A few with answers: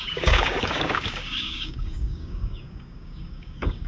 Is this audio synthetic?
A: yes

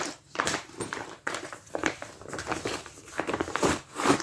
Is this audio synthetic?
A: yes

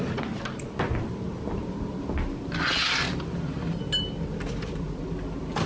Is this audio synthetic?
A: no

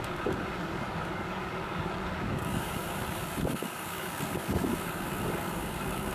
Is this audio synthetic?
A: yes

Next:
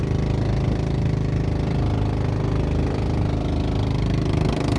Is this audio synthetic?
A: no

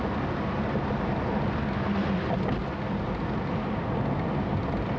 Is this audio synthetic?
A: no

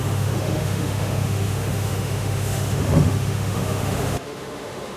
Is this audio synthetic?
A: yes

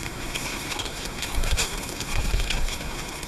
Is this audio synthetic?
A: yes